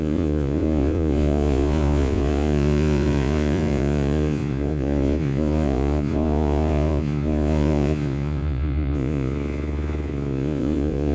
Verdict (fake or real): fake